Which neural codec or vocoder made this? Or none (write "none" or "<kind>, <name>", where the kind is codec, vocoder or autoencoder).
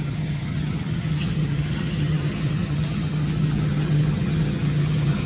vocoder, HiFi-GAN